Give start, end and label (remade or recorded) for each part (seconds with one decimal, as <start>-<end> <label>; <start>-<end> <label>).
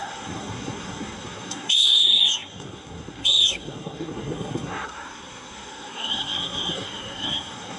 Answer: 0.0-7.8 remade